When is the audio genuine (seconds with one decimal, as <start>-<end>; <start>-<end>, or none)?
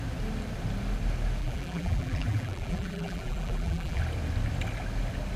0.0-1.4; 4.0-5.4